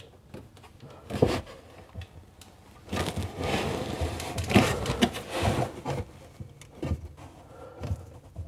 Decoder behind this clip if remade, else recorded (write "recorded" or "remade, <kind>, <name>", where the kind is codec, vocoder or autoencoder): recorded